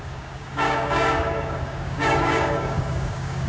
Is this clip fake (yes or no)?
yes